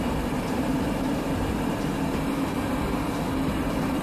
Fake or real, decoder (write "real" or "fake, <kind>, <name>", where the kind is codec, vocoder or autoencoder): fake, vocoder, BigVGAN v2